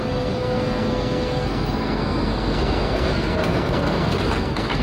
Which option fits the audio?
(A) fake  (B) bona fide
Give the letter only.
A